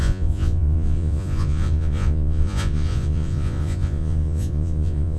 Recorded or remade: remade